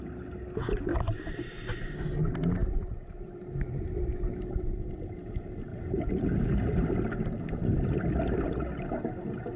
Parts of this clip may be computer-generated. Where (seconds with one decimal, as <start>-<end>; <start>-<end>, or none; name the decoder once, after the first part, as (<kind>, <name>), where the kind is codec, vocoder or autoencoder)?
2.6-4.0 (vocoder, BigVGAN v2); 5.7-6.8